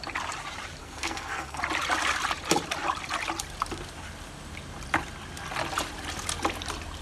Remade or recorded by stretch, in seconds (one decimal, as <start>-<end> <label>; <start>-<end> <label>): 0.0-0.8 recorded; 0.8-1.6 remade; 1.6-7.0 recorded